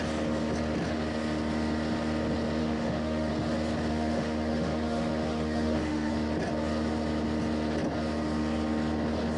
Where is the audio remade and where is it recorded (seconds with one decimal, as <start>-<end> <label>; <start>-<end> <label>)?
0.0-2.6 recorded; 2.6-3.3 remade; 3.3-3.9 recorded; 3.9-6.1 remade; 6.1-9.4 recorded